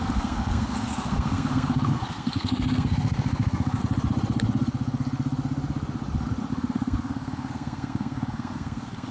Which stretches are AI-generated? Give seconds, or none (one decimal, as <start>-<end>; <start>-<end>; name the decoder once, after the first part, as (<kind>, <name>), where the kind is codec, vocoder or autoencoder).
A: 0.0-3.8 (codec, SNAC); 6.5-9.1